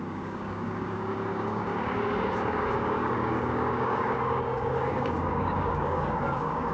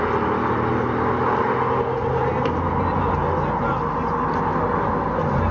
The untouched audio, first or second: second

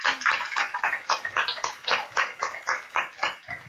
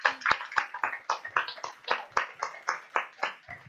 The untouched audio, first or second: second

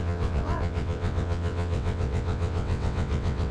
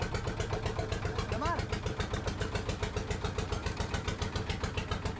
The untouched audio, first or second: second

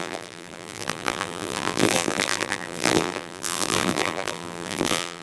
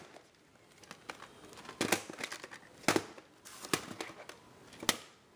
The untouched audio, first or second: second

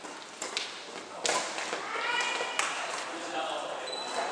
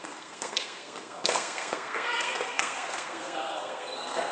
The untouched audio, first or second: first